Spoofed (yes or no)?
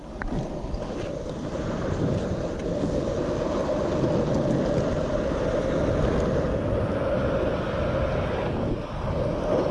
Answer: no